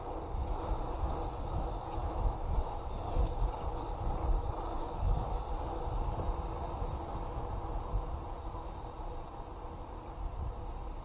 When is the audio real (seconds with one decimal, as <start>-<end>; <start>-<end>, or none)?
0.0-0.4; 1.1-2.0; 2.8-4.8; 5.4-11.0